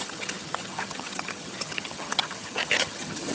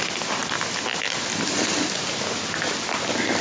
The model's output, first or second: first